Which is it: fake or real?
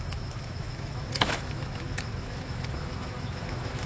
fake